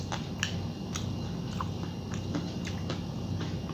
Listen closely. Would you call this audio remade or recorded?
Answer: recorded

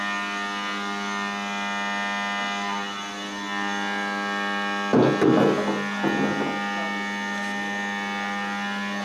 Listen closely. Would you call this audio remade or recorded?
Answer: recorded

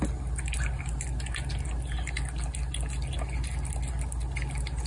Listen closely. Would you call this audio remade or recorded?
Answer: recorded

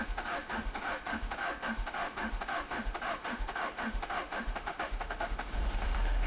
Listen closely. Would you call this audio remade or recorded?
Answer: remade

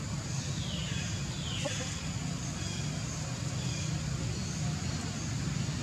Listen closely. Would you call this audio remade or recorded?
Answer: recorded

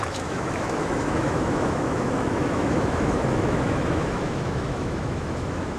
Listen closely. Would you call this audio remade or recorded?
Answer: remade